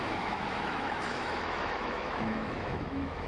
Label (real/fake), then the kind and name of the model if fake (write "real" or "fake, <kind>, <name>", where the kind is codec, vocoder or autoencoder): fake, autoencoder, DAC-VAE